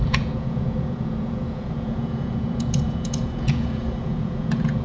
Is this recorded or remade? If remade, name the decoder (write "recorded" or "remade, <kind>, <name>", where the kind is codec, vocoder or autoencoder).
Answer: remade, vocoder, Vocos